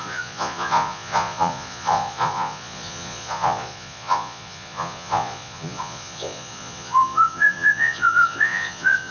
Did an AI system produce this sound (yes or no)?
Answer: yes